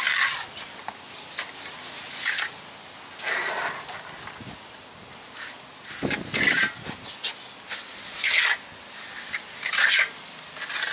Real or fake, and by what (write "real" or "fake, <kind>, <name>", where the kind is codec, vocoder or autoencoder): real